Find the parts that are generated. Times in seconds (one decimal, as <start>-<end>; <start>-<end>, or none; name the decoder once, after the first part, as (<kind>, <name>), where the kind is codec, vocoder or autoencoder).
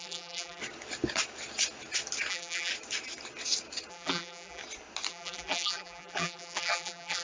0.0-0.6 (vocoder, BigVGAN v2); 2.3-2.7; 3.9-4.6; 5.1-7.2